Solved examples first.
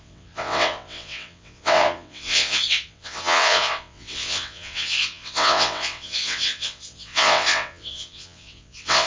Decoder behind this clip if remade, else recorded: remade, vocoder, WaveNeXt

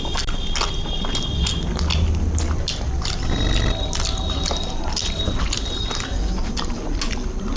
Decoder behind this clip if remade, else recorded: recorded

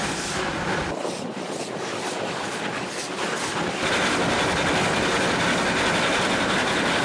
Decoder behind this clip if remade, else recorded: recorded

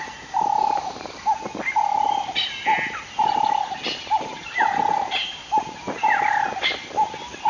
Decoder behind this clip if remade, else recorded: recorded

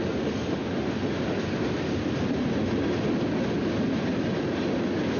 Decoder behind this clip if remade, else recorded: recorded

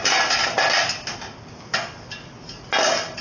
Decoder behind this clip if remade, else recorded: recorded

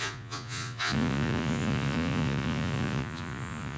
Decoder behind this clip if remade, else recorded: remade, vocoder, Vocos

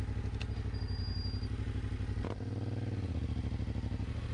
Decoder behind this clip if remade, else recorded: recorded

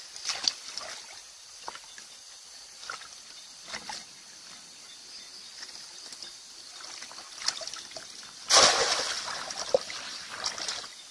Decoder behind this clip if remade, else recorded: recorded